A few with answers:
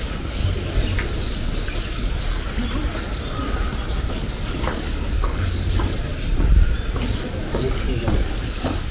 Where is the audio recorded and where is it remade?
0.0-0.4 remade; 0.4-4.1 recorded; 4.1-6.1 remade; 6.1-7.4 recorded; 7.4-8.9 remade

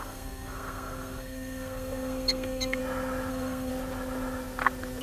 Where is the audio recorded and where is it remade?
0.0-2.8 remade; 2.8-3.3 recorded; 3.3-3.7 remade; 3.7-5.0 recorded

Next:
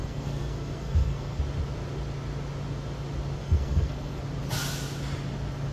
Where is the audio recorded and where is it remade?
0.0-1.4 remade; 1.4-3.4 recorded; 3.4-4.2 remade; 4.2-5.7 recorded

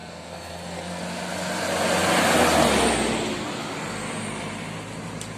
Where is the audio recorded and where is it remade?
0.0-1.0 remade; 1.0-5.4 recorded

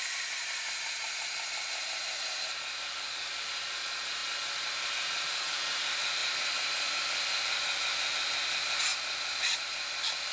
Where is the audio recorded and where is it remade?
0.0-10.3 recorded